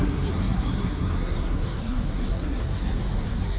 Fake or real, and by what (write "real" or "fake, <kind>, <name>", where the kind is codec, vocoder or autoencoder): fake, codec, SNAC